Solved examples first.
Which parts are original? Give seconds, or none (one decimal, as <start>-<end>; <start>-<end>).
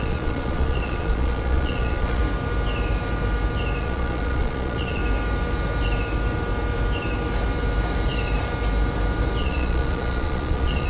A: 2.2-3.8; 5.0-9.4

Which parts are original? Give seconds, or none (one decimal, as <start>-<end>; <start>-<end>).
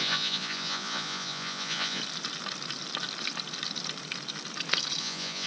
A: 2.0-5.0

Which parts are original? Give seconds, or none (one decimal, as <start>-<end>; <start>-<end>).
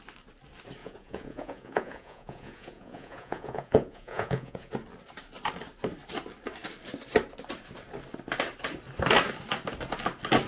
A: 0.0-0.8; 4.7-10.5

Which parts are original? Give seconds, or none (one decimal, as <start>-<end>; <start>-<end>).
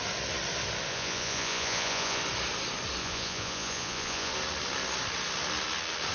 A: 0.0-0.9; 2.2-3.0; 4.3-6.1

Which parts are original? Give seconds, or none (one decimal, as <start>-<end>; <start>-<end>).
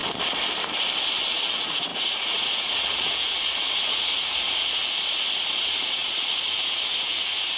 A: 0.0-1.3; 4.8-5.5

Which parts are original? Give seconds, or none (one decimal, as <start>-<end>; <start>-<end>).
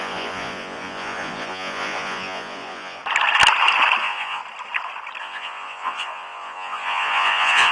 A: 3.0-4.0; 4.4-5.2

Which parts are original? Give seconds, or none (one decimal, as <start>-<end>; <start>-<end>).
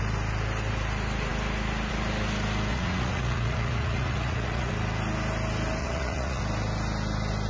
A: 0.0-2.7; 4.7-5.8; 6.4-7.5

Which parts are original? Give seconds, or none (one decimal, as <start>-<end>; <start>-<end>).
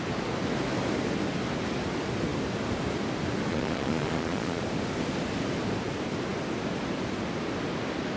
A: 0.0-3.5; 4.6-8.2